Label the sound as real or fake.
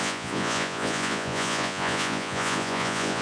fake